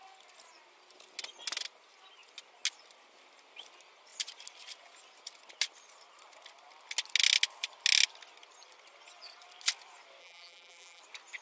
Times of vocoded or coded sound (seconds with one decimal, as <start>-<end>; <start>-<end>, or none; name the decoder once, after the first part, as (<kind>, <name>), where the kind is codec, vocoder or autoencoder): 10.2-11.0 (vocoder, BigVGAN v2)